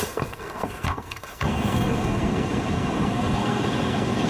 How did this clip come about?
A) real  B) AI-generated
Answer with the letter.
B